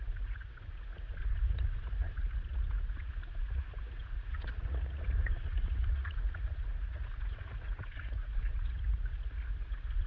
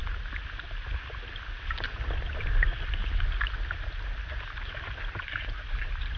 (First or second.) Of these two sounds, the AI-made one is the first